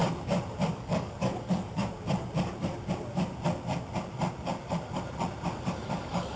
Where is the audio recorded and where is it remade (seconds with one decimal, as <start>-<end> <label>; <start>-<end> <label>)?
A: 0.0-0.7 recorded; 0.7-1.8 remade; 1.8-5.6 recorded; 5.6-6.4 remade